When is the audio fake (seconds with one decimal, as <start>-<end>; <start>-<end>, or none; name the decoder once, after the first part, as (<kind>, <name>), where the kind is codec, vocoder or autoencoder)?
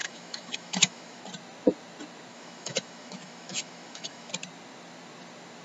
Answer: 0.0-1.2 (autoencoder, DAC-VAE); 2.3-4.3